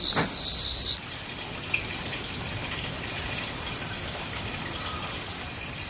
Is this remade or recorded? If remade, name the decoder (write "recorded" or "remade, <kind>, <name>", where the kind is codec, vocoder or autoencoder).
recorded